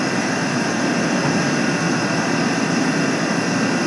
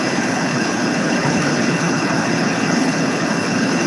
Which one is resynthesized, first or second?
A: second